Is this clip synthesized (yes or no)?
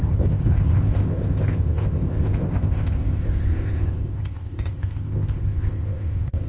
yes